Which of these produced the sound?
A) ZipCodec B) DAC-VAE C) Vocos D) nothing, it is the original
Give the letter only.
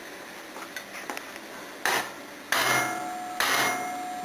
D